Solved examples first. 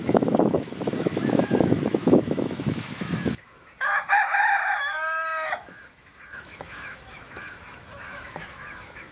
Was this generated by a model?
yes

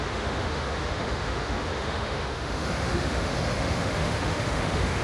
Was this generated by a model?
yes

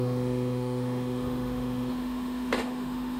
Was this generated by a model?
yes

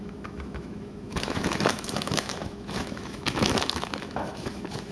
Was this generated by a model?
yes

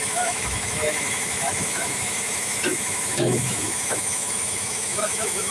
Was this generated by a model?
yes